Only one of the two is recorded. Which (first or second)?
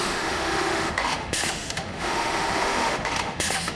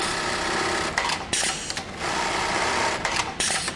second